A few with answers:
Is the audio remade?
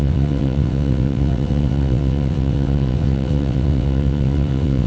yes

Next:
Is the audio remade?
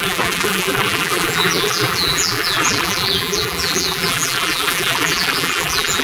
yes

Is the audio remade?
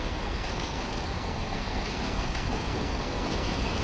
yes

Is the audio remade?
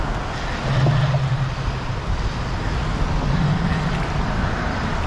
no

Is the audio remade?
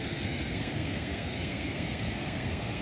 yes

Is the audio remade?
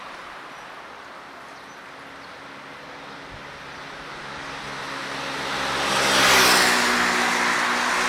no